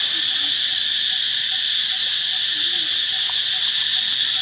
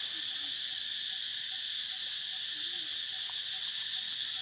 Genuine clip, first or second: second